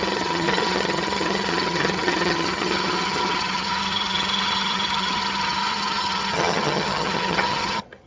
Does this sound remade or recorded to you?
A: remade